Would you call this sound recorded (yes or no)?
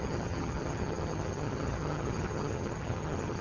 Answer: no